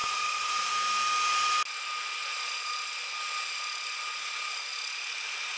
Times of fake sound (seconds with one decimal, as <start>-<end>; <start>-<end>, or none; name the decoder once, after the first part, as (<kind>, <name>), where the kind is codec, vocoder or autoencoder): 0.0-0.7 (vocoder, Vocos); 2.2-2.7